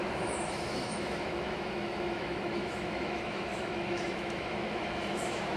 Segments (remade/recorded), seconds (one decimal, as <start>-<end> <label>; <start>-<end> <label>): 0.0-5.6 remade